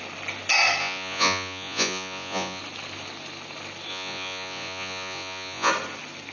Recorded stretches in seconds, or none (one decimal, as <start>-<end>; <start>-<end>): 0.0-0.8; 2.6-3.9; 5.7-6.3